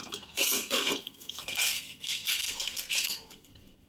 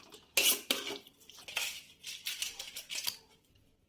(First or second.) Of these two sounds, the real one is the second